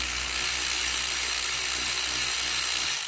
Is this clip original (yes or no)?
yes